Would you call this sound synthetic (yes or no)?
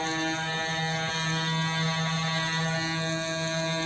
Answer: no